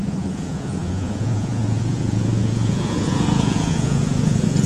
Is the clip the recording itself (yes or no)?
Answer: no